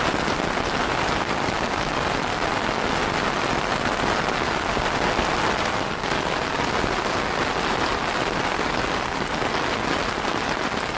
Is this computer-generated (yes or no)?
no